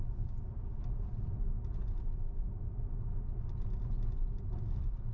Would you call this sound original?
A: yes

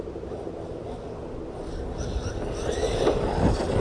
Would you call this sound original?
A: yes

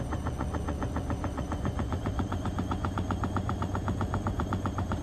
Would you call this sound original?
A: no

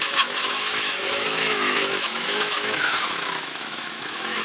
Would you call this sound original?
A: no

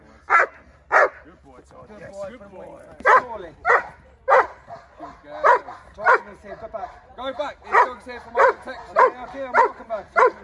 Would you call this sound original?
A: yes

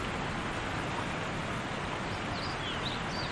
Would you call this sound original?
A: yes